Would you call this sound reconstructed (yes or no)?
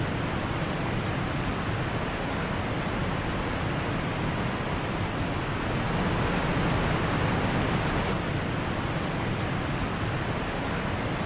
no